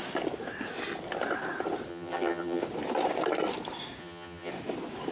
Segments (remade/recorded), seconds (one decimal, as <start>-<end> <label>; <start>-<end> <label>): 0.0-1.9 recorded; 1.9-2.6 remade; 2.6-4.0 recorded; 4.0-4.5 remade; 4.5-5.1 recorded